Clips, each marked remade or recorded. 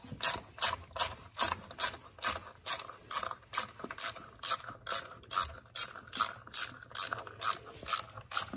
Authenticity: recorded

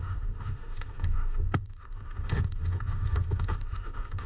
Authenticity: remade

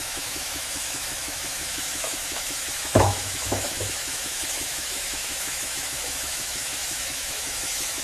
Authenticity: remade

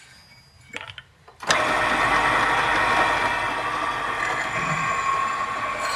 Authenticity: recorded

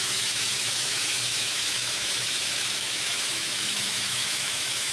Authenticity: remade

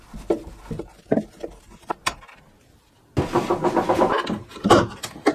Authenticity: recorded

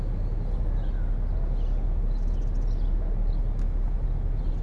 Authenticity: recorded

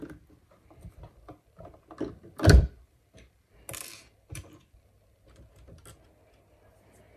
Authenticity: recorded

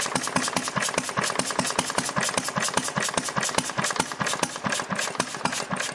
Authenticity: recorded